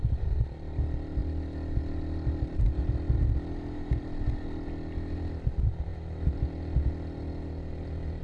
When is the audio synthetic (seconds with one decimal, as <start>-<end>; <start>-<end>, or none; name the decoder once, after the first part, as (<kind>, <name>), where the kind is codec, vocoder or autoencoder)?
none